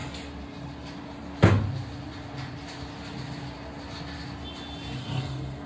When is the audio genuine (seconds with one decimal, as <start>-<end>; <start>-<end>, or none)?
0.0-5.0

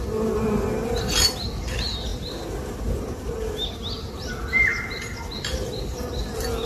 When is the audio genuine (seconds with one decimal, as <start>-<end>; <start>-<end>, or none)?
0.0-6.7

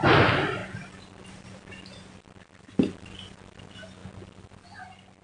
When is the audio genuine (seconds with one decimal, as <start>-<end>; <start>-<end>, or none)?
0.0-5.2

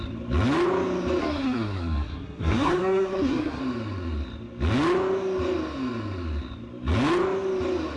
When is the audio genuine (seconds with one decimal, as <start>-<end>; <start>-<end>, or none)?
0.0-1.2; 3.6-8.0

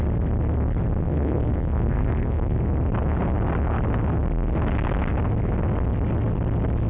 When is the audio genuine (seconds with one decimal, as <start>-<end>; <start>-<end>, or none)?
0.0-1.0; 2.6-6.9

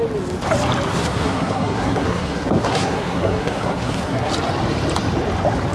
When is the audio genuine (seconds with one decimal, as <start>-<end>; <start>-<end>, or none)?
0.0-0.9; 4.3-5.7

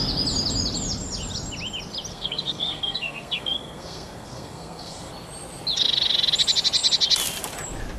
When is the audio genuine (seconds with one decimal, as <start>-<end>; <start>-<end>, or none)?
0.0-2.1; 5.1-8.0